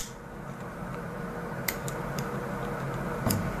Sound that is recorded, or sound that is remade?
remade